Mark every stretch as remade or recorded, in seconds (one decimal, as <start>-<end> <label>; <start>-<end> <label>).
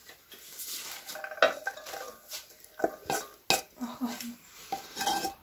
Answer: 0.0-5.4 recorded